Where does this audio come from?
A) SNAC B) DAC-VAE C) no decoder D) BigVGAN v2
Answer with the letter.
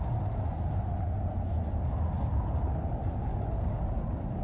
C